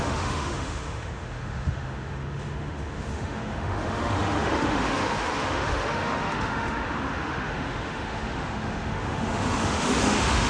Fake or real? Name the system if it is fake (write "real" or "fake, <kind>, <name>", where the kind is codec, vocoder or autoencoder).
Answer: fake, autoencoder, DAC-VAE